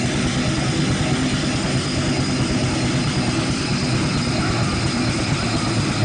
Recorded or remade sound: recorded